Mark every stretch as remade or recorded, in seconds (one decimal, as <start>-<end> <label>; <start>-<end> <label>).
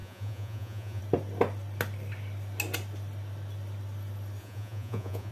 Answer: 0.0-1.0 remade; 1.0-4.4 recorded; 4.4-5.3 remade